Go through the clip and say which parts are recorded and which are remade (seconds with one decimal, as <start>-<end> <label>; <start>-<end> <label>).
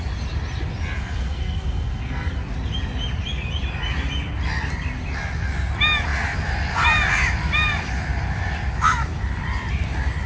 0.0-1.0 recorded; 1.0-2.3 remade; 2.3-10.3 recorded